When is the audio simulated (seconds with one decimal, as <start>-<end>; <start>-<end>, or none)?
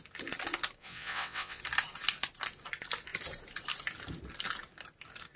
0.8-1.6